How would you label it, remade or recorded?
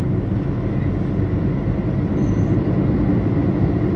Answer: recorded